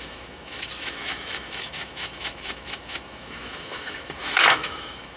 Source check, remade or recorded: remade